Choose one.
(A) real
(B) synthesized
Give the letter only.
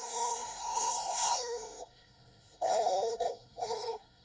B